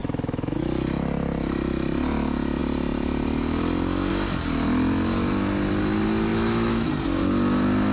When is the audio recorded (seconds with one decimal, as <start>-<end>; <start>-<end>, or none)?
0.6-6.3; 6.9-7.9